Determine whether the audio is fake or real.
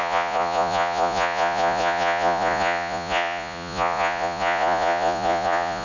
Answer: fake